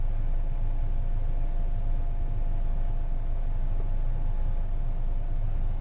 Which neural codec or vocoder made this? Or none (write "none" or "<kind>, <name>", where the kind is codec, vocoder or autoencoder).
none